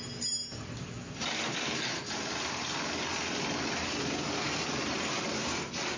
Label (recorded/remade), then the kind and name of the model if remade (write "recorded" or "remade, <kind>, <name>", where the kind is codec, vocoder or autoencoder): recorded